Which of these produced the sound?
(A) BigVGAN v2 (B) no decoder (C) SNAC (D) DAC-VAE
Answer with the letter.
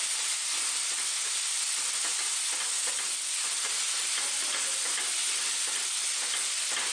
B